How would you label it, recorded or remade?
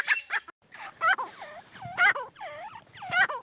remade